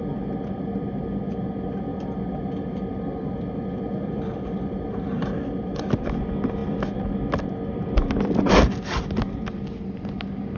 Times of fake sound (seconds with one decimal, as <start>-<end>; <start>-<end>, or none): 1.9-5.9